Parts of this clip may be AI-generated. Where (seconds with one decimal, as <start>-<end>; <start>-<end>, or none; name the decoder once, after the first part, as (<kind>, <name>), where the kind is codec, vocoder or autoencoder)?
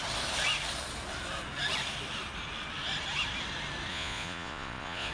3.9-5.1 (vocoder, Vocos)